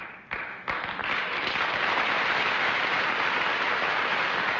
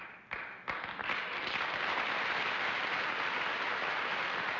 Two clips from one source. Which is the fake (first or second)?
first